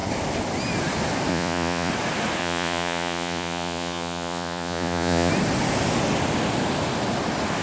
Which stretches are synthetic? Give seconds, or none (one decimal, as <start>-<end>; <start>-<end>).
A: 1.3-1.9; 2.4-5.3